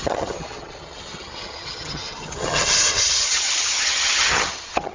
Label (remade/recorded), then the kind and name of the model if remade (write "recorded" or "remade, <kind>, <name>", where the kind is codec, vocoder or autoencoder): remade, vocoder, HiFi-GAN